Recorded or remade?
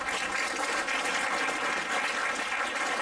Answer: recorded